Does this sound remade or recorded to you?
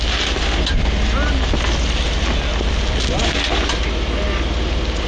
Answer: recorded